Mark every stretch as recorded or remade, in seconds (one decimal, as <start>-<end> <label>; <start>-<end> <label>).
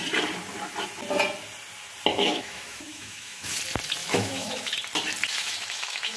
0.0-2.1 recorded; 2.1-3.6 remade; 3.6-4.0 recorded; 4.0-4.7 remade; 4.7-5.3 recorded; 5.3-6.2 remade